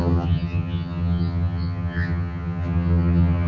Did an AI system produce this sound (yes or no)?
yes